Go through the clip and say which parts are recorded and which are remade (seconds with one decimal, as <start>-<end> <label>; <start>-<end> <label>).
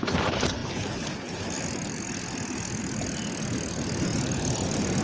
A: 0.0-5.0 recorded